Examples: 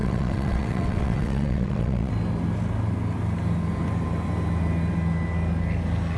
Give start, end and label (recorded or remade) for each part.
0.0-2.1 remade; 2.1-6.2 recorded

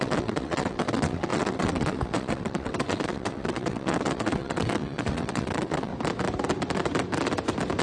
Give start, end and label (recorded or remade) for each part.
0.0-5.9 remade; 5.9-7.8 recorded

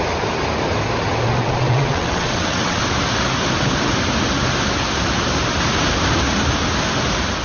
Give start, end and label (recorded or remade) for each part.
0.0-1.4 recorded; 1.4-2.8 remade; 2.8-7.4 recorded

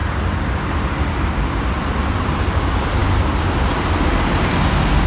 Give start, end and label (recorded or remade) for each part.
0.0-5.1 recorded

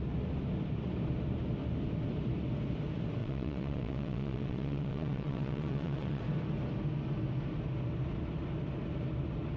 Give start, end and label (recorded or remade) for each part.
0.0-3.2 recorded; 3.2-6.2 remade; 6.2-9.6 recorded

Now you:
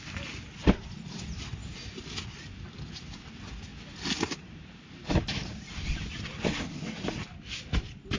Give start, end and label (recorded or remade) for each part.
0.0-8.2 recorded

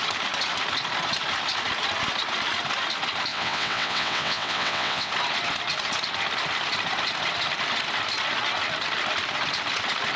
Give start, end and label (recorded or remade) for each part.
0.0-3.3 recorded; 3.3-5.1 remade; 5.1-10.2 recorded

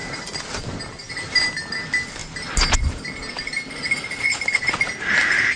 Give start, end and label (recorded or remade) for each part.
0.0-5.6 recorded